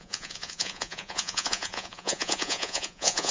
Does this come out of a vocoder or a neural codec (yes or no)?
yes